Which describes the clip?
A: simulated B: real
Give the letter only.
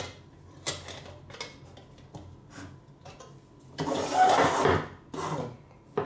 B